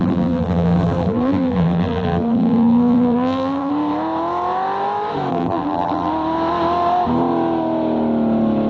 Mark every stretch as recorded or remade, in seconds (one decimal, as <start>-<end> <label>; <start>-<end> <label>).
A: 0.0-3.7 remade; 3.7-5.3 recorded; 5.3-6.1 remade; 6.1-8.7 recorded